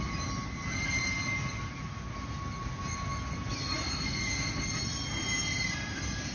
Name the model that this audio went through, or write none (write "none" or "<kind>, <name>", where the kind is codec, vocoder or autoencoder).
none